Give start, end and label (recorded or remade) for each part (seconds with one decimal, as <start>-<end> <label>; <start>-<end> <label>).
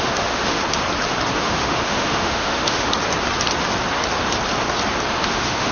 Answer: 0.0-0.6 remade; 0.6-1.4 recorded; 1.4-2.9 remade; 2.9-5.2 recorded; 5.2-5.7 remade